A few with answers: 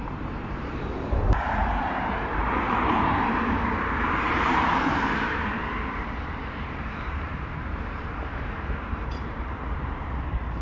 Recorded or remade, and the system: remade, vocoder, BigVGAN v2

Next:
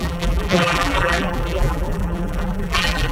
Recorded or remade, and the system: remade, vocoder, BigVGAN v2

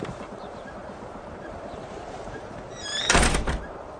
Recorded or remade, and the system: remade, vocoder, BigVGAN v2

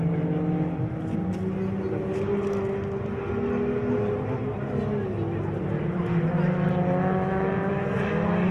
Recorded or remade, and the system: recorded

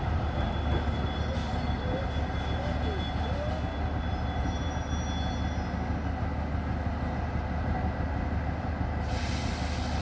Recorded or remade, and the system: recorded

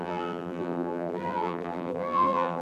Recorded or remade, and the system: remade, vocoder, BigVGAN v2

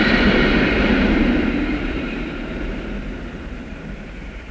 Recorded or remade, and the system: remade, vocoder, BigVGAN v2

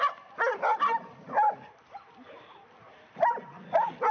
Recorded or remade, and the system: recorded